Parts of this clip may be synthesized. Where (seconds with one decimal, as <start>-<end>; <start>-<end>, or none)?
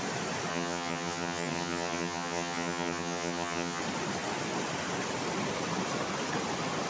0.5-3.8